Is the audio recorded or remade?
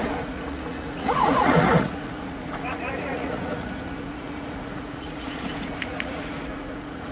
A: remade